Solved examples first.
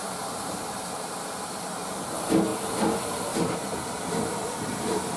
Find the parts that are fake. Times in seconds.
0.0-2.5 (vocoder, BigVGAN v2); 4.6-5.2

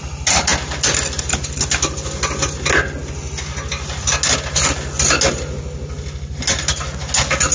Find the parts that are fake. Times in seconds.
none

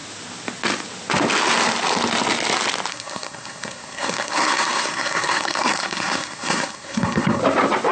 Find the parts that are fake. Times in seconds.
2.9-7.4 (codec, SNAC)

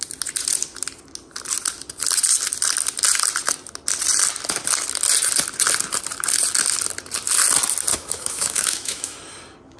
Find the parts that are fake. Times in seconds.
7.9-9.2 (autoencoder, DAC-VAE)

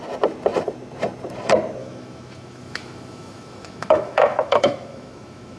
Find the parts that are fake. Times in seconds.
1.8-5.6 (autoencoder, DAC-VAE)

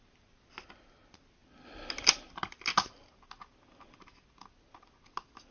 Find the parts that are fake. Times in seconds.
none

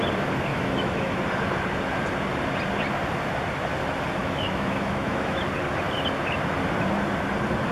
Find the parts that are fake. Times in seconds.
0.5-1.2 (autoencoder, DAC-VAE); 4.2-5.4

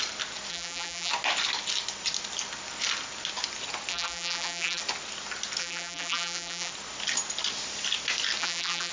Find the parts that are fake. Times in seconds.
0.5-1.1 (vocoder, BigVGAN v2); 3.9-4.8; 5.6-6.7; 8.4-8.9